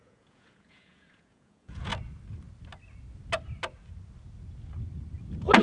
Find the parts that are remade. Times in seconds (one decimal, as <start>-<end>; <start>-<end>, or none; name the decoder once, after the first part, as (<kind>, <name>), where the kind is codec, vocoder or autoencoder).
0.0-1.9 (vocoder, Vocos)